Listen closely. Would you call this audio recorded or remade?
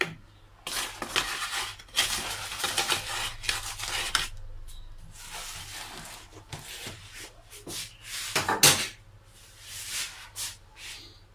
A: recorded